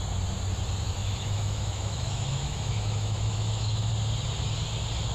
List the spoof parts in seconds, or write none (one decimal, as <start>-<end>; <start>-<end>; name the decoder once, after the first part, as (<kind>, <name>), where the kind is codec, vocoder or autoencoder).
1.0-3.9 (autoencoder, DAC-VAE)